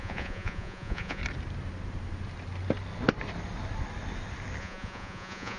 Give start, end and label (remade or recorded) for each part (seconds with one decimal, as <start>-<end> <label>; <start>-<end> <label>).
0.0-1.2 remade; 1.2-4.6 recorded; 4.6-5.6 remade